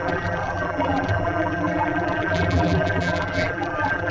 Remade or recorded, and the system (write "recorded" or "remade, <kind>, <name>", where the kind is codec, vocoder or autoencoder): remade, vocoder, BigVGAN v2